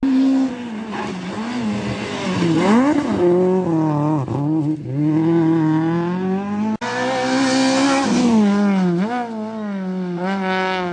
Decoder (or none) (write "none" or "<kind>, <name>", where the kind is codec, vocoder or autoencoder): none